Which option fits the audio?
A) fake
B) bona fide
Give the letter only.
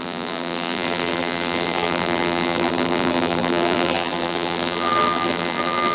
A